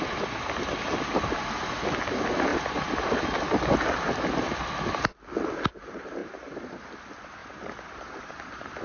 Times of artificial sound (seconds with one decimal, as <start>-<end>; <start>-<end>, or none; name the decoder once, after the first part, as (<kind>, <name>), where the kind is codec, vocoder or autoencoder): 2.5-3.2 (vocoder, BigVGAN v2); 6.2-6.8; 7.4-8.8